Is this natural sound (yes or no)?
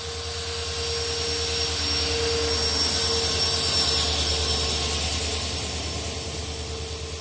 yes